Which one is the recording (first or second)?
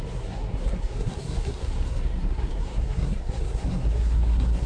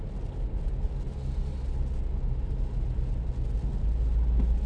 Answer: second